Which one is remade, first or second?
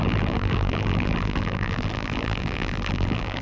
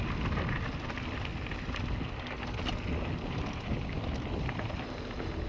first